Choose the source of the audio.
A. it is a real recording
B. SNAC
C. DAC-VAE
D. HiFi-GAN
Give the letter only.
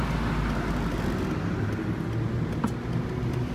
A